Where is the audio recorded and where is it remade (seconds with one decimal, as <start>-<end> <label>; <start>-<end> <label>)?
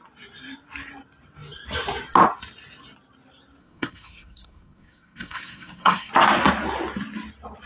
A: 0.0-3.6 recorded; 3.6-6.1 remade; 6.1-7.7 recorded